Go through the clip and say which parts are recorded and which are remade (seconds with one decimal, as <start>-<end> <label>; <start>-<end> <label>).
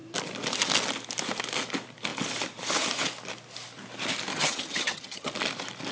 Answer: 0.0-4.3 recorded; 4.3-5.3 remade; 5.3-5.9 recorded